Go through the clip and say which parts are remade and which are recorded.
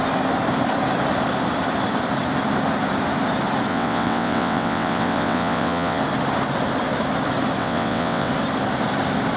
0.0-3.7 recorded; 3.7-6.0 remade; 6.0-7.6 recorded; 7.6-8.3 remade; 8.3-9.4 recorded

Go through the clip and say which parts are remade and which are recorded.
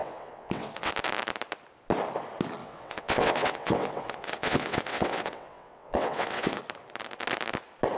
0.0-0.9 remade; 0.9-2.6 recorded; 2.6-6.6 remade; 6.6-8.0 recorded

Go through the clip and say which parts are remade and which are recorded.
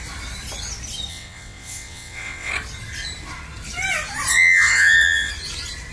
0.0-1.1 recorded; 1.1-2.5 remade; 2.5-4.3 recorded; 4.3-5.3 remade; 5.3-5.9 recorded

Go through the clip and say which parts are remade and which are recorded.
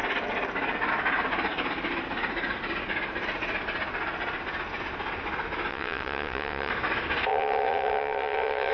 0.0-5.7 recorded; 5.7-6.7 remade; 6.7-7.3 recorded; 7.3-8.7 remade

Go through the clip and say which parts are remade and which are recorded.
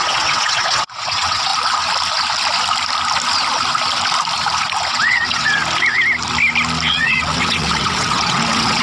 0.0-1.5 remade; 1.5-4.9 recorded; 4.9-5.6 remade; 5.6-6.9 recorded; 6.9-8.8 remade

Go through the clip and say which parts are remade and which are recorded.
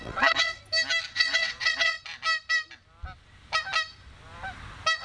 0.0-0.6 remade; 0.6-1.1 recorded; 1.1-2.0 remade; 2.0-5.0 recorded